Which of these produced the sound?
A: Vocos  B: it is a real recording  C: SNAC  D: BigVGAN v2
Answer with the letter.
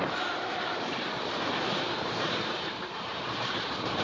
D